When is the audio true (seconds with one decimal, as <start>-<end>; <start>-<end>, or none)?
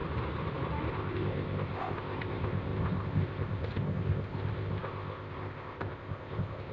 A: 0.0-0.9